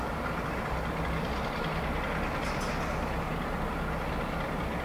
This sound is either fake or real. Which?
real